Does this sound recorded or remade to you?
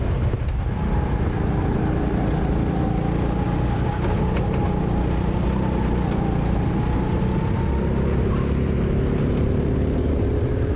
recorded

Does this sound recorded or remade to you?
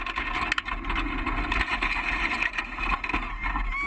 recorded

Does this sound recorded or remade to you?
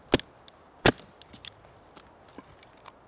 recorded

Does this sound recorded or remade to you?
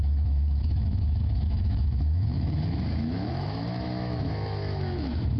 remade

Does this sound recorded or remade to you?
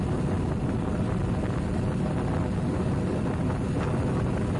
recorded